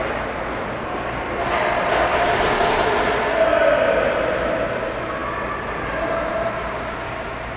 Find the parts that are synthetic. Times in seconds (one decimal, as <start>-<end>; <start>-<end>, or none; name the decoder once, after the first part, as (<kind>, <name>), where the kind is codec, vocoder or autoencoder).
none